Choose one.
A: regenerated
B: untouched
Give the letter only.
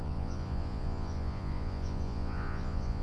A